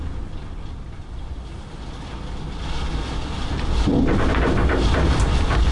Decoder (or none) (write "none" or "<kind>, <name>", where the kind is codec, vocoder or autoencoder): none